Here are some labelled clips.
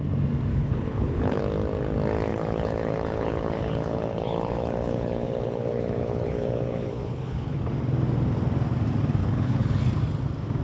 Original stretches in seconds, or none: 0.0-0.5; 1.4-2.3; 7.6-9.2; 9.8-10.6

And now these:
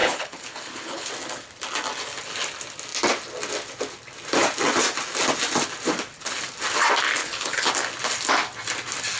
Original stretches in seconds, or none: 1.1-7.2; 7.7-9.2

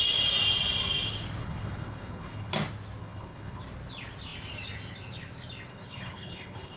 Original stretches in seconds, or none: 0.0-1.4; 2.5-3.0; 3.6-5.7

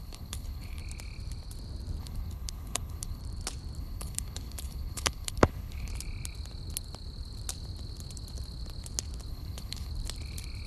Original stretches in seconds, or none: 0.8-2.0; 3.2-3.8; 5.9-9.3; 9.9-10.7

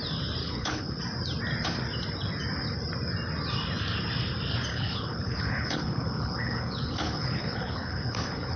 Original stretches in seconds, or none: 0.0-0.4; 1.0-4.7

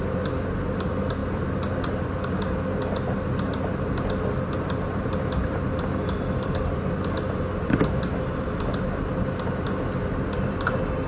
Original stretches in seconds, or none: 0.0-11.1

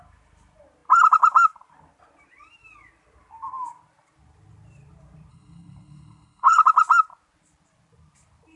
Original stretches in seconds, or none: 0.0-5.3; 6.6-8.6

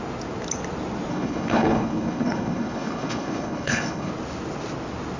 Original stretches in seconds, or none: 0.0-1.1; 4.1-5.2